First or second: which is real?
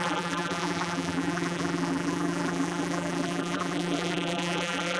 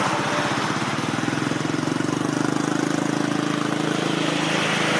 second